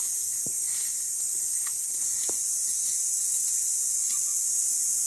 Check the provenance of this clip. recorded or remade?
remade